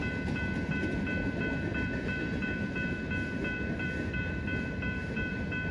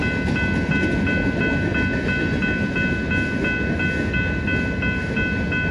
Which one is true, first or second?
second